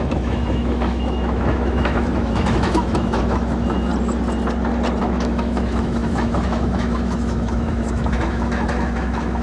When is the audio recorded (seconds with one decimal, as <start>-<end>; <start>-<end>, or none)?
3.9-5.0